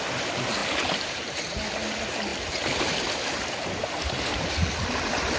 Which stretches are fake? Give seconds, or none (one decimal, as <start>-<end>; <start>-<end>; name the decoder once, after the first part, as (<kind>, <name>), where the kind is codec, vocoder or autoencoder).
0.6-1.4 (vocoder, BigVGAN v2)